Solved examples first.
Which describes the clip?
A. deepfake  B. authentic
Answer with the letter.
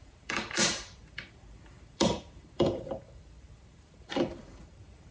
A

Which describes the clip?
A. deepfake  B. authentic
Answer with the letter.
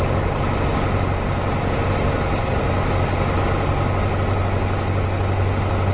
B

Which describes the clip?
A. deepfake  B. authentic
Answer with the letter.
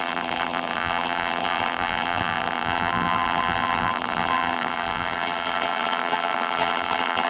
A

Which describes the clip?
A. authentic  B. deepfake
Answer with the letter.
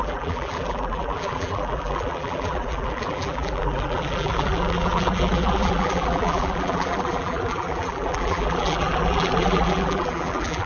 B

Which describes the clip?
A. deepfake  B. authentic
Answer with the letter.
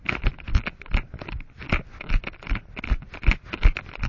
B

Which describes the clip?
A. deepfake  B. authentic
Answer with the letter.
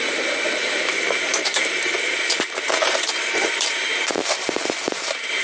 A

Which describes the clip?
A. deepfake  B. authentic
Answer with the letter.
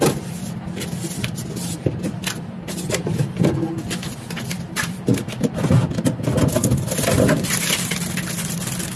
A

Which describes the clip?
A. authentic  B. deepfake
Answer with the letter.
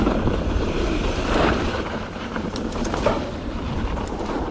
B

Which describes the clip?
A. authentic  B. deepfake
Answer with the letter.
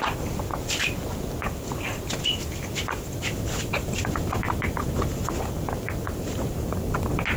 A